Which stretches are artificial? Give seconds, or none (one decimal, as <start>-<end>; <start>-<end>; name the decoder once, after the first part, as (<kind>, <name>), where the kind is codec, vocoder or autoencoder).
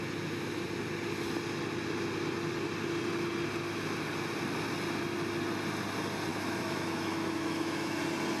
6.3-8.0 (autoencoder, DAC-VAE)